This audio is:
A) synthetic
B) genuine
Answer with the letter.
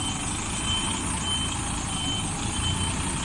B